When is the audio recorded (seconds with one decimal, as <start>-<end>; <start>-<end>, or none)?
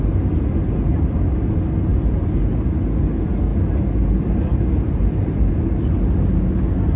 0.0-7.0